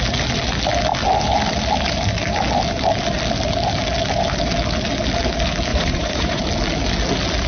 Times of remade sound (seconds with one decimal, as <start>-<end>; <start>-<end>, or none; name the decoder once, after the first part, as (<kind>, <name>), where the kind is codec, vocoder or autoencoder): 5.7-6.4 (vocoder, Vocos)